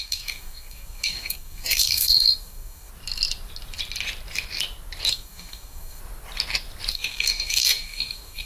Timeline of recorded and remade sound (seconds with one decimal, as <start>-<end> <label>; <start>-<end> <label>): 0.0-2.9 remade; 2.9-5.1 recorded; 5.1-6.0 remade; 6.0-6.9 recorded; 6.9-8.5 remade